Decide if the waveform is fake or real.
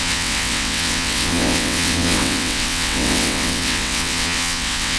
fake